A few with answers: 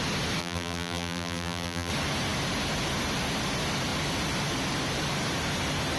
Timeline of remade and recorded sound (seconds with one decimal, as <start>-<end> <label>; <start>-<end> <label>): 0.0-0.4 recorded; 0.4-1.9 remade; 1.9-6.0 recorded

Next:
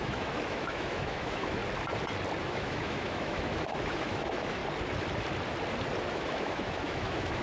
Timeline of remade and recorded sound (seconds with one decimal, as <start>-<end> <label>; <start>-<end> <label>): 0.0-1.6 remade; 1.6-2.4 recorded; 2.4-4.6 remade; 4.6-6.1 recorded; 6.1-7.4 remade

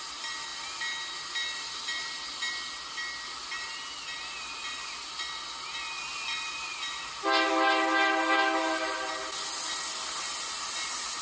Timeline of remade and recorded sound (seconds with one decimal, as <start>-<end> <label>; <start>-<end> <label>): 0.0-11.2 recorded